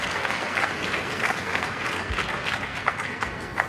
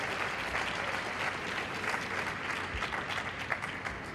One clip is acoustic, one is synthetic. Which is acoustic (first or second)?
second